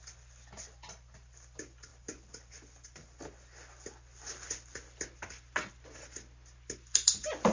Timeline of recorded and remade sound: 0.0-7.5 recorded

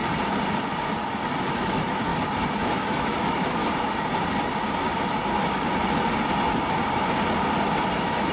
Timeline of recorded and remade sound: 0.0-1.5 recorded; 1.5-2.1 remade; 2.1-2.6 recorded; 2.6-3.6 remade; 3.6-7.9 recorded; 7.9-8.3 remade

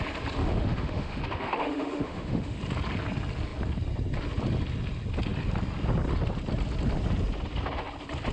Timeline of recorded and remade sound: 0.0-0.4 recorded; 0.4-2.6 remade; 2.6-8.3 recorded

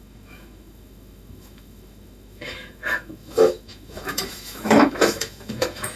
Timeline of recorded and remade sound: 0.0-6.0 remade

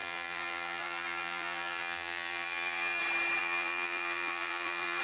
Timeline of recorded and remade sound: 0.0-3.0 remade; 3.0-3.4 recorded; 3.4-5.0 remade

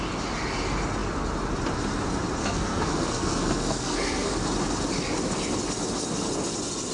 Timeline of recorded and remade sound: 0.0-2.4 recorded; 2.4-4.3 remade; 4.3-6.9 recorded

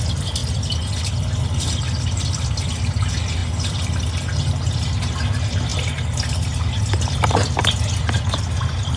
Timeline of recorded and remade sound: 0.0-9.0 recorded

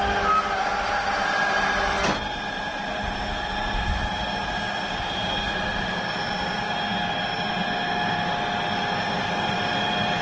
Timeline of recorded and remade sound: 0.0-10.2 recorded